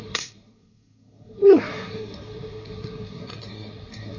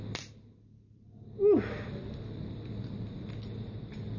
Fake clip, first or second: first